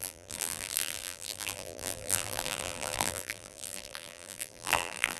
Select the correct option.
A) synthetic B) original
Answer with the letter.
A